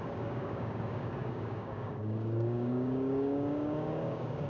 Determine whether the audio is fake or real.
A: fake